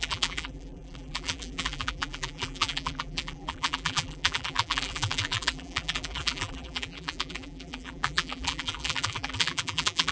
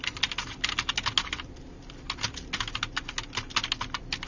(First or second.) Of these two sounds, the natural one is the second